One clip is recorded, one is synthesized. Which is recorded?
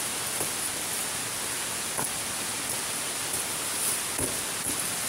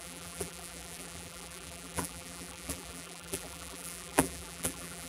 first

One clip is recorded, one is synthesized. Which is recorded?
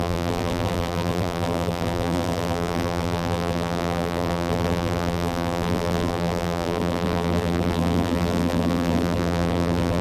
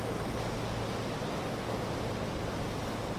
second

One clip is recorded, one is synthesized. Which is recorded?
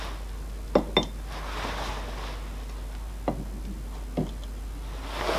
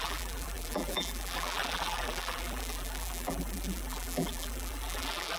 first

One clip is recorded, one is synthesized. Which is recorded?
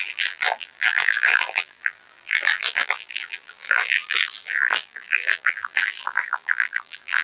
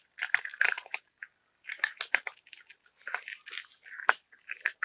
second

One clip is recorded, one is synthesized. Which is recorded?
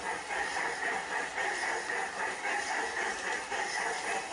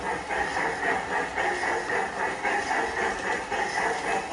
second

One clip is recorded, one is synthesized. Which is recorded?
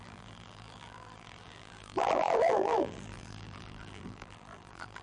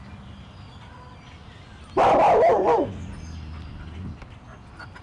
second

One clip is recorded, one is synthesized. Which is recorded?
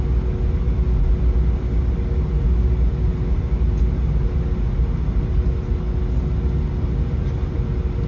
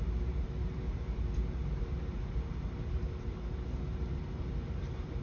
first